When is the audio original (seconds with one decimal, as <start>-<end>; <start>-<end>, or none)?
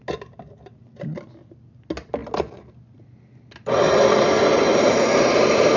0.0-5.8